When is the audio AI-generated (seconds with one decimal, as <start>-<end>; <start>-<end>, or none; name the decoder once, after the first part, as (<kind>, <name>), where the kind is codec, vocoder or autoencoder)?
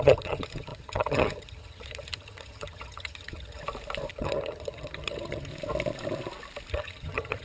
0.0-3.6 (vocoder, HiFi-GAN); 4.1-5.5; 6.7-7.4